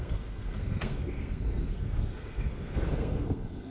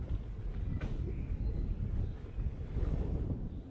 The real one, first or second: second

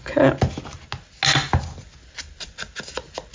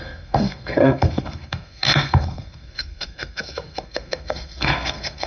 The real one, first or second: first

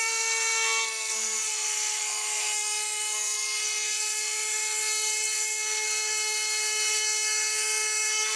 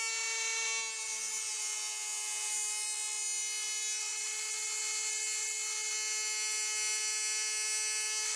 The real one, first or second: second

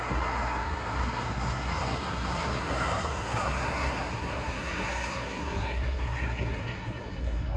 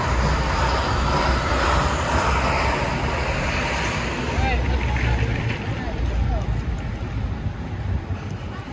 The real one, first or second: second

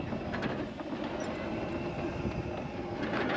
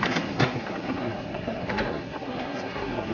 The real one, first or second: first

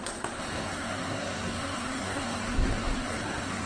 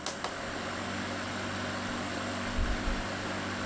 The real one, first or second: second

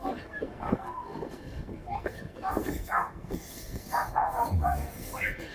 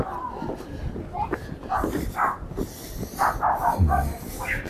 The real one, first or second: second